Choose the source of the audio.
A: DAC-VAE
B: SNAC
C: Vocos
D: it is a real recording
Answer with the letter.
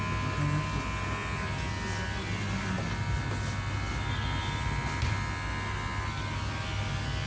D